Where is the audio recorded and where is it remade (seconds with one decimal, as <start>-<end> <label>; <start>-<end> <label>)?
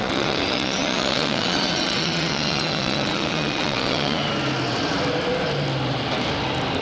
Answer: 0.0-4.2 remade; 4.2-6.8 recorded